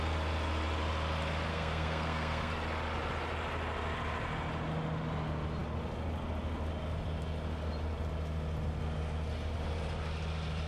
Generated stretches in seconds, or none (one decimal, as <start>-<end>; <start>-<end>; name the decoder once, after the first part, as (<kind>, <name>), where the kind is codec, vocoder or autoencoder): 1.5-2.5 (codec, SNAC)